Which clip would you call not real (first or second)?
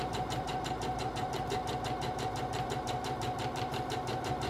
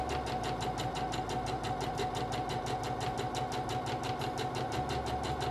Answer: first